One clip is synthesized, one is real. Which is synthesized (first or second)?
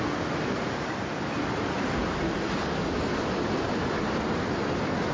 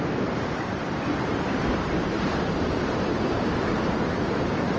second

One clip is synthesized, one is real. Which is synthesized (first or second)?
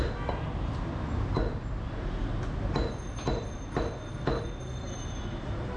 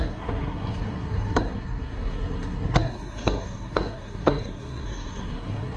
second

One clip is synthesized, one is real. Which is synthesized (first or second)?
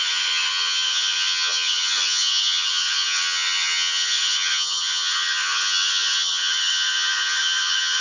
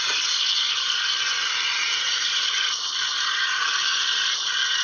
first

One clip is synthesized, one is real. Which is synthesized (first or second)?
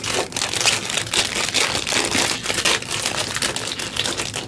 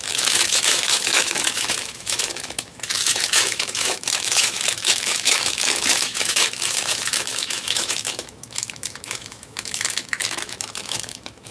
second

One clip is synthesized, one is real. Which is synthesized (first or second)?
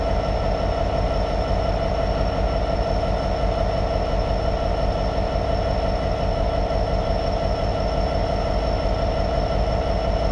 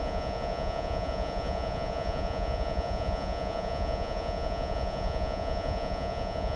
second